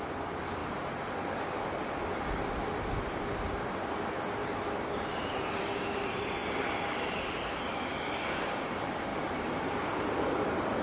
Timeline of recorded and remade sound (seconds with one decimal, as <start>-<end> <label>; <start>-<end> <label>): 0.0-10.8 recorded